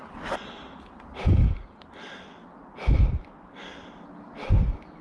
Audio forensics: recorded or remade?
recorded